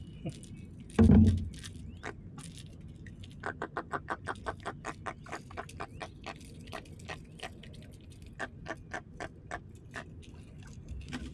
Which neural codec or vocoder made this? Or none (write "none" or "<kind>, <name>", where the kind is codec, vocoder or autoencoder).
none